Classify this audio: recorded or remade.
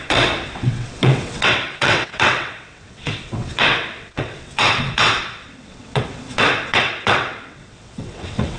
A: remade